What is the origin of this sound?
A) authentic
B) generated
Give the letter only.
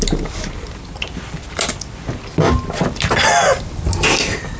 A